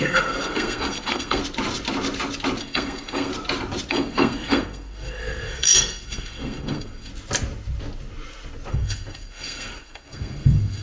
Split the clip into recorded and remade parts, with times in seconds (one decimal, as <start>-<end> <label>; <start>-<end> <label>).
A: 0.0-1.4 remade; 1.4-2.6 recorded; 2.6-3.3 remade; 3.3-3.9 recorded; 3.9-7.1 remade; 7.1-8.7 recorded; 8.7-10.8 remade

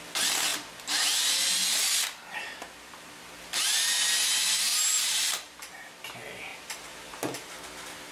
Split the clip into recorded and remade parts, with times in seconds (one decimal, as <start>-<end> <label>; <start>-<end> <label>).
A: 0.0-4.7 recorded; 4.7-5.9 remade; 5.9-6.5 recorded; 6.5-7.5 remade; 7.5-8.1 recorded

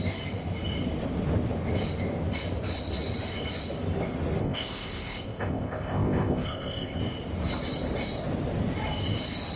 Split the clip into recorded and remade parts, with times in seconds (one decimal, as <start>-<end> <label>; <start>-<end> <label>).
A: 0.0-4.4 recorded; 4.4-7.0 remade; 7.0-9.6 recorded

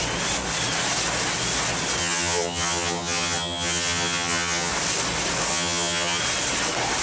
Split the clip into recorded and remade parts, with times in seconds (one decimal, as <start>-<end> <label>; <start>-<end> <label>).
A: 0.0-2.0 recorded; 2.0-4.7 remade; 4.7-5.5 recorded; 5.5-6.2 remade; 6.2-7.0 recorded

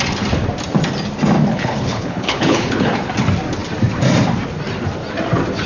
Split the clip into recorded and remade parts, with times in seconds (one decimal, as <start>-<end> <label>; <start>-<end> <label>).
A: 0.0-1.5 recorded; 1.5-3.1 remade; 3.1-5.7 recorded

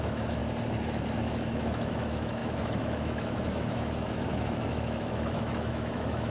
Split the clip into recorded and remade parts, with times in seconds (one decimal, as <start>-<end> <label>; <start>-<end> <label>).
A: 0.0-0.4 remade; 0.4-1.2 recorded; 1.2-6.3 remade

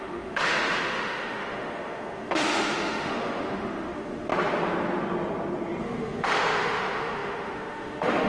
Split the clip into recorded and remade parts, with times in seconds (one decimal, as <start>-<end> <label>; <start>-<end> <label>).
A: 0.0-4.3 remade; 4.3-5.8 recorded; 5.8-8.3 remade